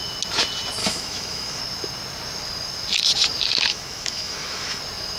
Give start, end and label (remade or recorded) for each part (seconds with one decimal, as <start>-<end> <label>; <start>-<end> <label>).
0.0-0.8 recorded; 0.8-1.6 remade; 1.6-3.7 recorded; 3.7-4.8 remade; 4.8-5.2 recorded